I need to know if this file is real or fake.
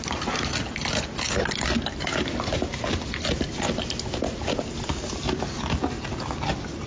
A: real